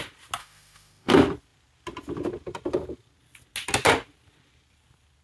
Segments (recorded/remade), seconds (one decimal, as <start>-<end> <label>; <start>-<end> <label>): 0.0-0.4 recorded; 0.4-1.1 remade; 1.1-5.2 recorded

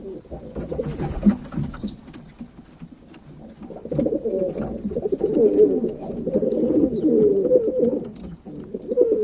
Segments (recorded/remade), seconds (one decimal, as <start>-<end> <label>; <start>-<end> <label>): 0.0-9.2 recorded